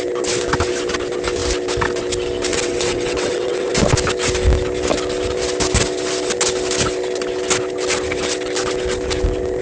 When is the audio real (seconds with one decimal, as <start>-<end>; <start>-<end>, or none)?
0.0-2.5; 3.7-9.6